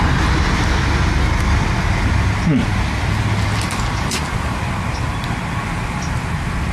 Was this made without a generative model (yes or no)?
yes